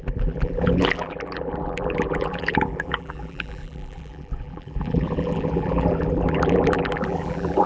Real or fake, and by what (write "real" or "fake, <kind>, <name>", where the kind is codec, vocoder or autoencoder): fake, vocoder, BigVGAN v2